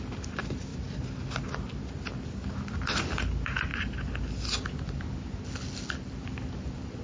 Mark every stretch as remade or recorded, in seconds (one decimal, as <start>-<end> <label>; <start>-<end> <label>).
0.0-7.0 recorded